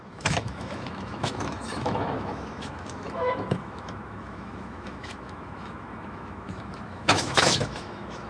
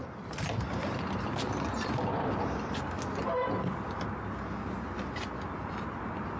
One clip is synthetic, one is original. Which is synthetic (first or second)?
first